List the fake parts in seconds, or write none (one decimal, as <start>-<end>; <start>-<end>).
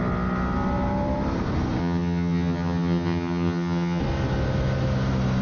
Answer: 1.8-4.0